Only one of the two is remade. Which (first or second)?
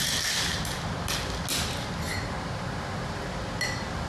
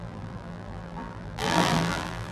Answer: second